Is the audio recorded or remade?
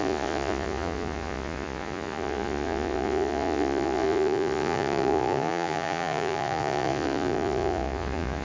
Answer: remade